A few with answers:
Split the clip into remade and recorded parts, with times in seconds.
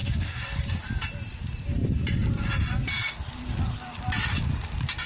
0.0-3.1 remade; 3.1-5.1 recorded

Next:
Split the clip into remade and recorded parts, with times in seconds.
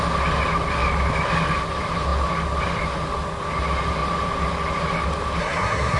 0.0-5.4 recorded; 5.4-6.0 remade